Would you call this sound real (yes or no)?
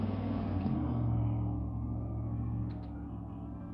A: no